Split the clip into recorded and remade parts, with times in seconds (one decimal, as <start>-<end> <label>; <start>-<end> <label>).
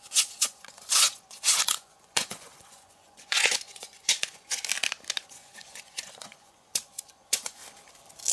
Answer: 0.0-4.6 remade; 4.6-5.2 recorded; 5.2-7.6 remade; 7.6-8.3 recorded